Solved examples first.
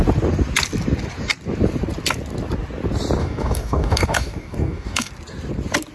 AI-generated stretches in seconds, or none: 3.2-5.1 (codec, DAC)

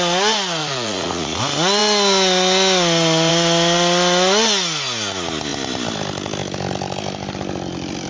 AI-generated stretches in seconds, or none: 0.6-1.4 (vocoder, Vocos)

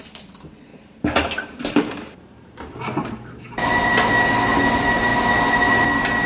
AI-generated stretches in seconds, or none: 0.7-4.1 (vocoder, BigVGAN v2)